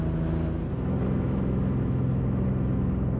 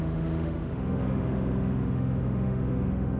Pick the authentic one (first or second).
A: first